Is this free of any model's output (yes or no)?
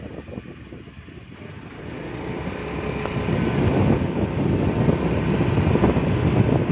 yes